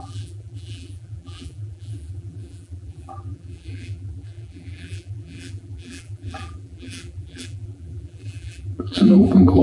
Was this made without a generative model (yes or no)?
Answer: no